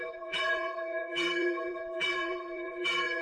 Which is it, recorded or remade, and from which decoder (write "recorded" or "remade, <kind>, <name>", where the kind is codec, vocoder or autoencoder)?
remade, vocoder, BigVGAN v2